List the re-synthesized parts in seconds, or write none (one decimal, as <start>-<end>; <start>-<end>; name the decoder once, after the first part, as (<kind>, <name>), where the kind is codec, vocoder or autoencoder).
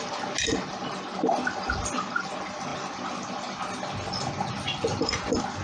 none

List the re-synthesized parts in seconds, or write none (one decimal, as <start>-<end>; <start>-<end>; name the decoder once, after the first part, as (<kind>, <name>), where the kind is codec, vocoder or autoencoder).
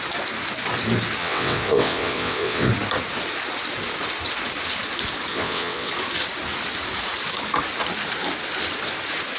1.2-2.7 (vocoder, WaveNeXt); 5.3-5.9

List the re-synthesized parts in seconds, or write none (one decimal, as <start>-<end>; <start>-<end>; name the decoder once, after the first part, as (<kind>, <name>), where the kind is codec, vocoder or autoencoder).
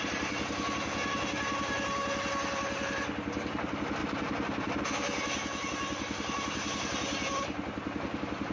none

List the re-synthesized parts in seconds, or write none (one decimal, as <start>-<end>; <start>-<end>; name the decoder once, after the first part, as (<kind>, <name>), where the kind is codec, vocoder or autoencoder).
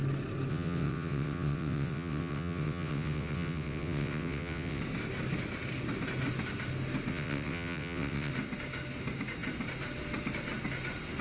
0.5-4.8 (vocoder, WaveNeXt); 7.1-8.3